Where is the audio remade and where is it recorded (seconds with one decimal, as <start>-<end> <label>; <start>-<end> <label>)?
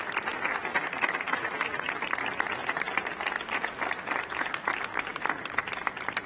0.0-0.7 recorded; 0.7-1.9 remade; 1.9-6.3 recorded